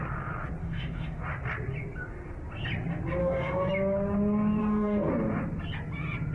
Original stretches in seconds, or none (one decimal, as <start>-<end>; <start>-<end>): 0.0-0.6; 1.2-3.2; 3.7-4.6; 5.1-6.3